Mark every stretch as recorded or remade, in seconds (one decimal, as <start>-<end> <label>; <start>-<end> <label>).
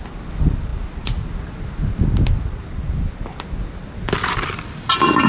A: 0.0-5.3 recorded